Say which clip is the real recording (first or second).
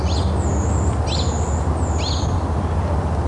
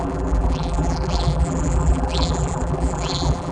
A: first